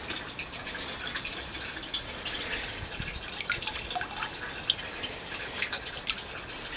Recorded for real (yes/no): yes